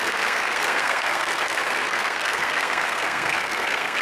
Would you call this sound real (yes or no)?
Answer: no